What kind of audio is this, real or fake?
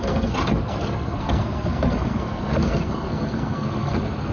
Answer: fake